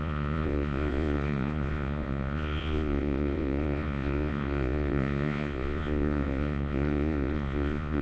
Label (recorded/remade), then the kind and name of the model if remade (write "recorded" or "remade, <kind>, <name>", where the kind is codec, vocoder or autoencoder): remade, vocoder, Vocos